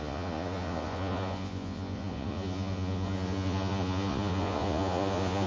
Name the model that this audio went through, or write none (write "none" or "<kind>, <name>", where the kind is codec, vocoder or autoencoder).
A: vocoder, Vocos